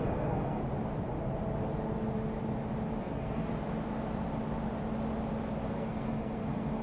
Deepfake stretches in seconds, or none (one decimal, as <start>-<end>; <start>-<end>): 0.0-0.6; 3.0-3.5; 5.7-6.8